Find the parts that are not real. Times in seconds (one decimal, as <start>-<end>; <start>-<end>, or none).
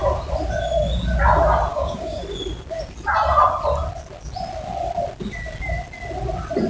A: 1.7-2.2